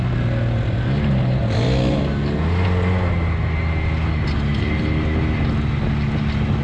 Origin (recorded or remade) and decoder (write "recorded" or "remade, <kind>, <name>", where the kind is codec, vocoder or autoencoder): recorded